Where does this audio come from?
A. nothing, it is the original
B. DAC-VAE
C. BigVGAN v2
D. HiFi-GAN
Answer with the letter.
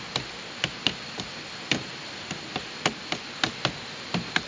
A